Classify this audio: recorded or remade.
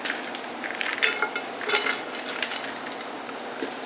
recorded